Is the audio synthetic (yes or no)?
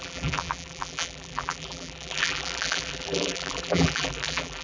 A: yes